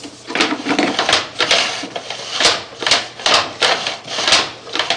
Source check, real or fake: real